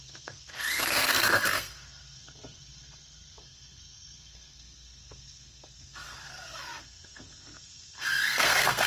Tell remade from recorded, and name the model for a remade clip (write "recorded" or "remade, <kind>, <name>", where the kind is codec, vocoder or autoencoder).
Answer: remade, codec, SNAC